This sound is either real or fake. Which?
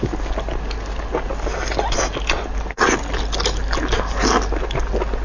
real